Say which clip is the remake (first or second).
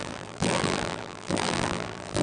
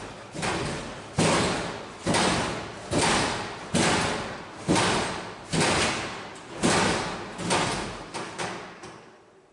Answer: first